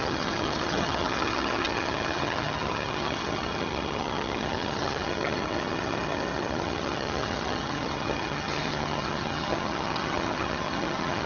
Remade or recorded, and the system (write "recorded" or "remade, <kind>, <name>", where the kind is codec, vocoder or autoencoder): remade, vocoder, HiFi-GAN